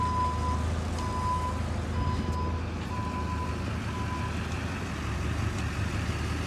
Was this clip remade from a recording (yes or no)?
no